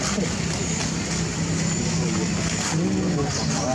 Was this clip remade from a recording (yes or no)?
no